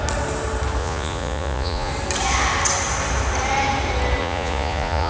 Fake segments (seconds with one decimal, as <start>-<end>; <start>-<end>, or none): 0.8-1.9; 4.2-5.1